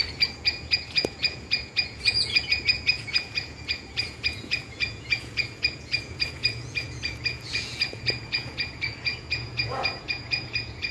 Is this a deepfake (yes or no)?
yes